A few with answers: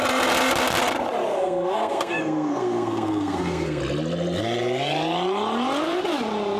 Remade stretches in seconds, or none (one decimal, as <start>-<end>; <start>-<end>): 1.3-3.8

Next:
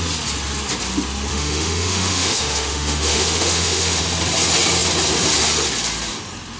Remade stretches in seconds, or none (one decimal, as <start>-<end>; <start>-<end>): 1.3-4.0

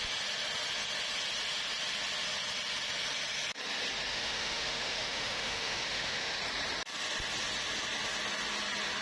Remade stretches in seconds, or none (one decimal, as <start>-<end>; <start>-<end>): 4.1-6.4

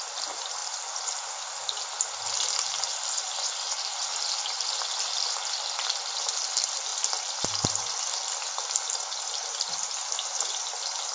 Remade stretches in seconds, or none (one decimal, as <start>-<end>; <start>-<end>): none

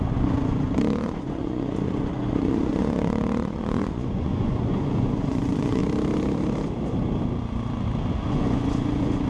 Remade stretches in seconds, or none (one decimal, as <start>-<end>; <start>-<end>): 0.0-5.8; 8.1-9.3

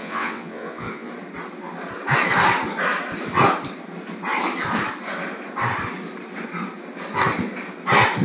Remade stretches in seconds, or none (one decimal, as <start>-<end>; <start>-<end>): 0.0-1.1

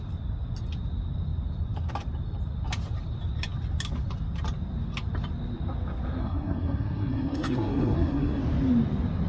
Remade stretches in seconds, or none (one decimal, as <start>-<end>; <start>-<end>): 6.2-8.4

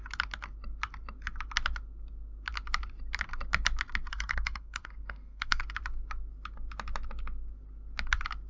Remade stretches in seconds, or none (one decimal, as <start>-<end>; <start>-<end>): 4.1-5.6